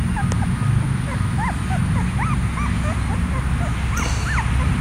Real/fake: real